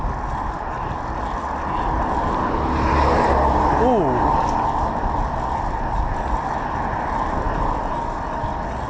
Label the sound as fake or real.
real